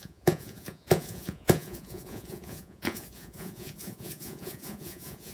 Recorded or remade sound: remade